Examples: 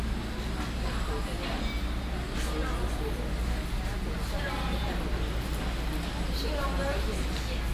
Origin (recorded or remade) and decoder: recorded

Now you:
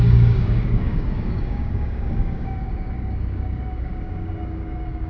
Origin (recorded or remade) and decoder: remade, codec, DAC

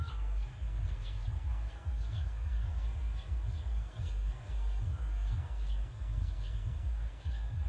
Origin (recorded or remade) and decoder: remade, codec, SNAC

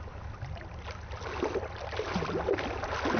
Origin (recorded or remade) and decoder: recorded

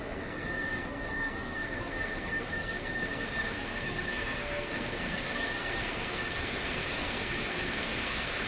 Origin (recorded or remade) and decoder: remade, codec, SNAC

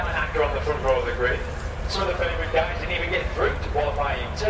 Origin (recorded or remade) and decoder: recorded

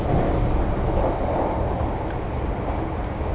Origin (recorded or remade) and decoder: recorded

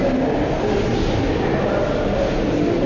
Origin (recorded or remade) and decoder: recorded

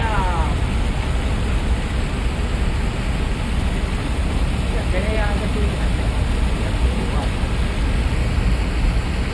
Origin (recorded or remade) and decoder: recorded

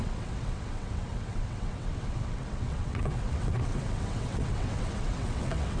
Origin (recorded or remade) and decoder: remade, vocoder, WaveNeXt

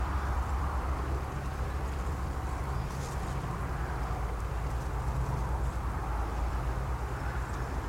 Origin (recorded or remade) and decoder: recorded